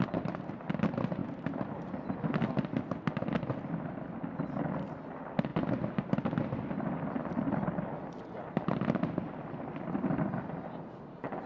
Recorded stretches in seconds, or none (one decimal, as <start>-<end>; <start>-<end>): 0.0-11.5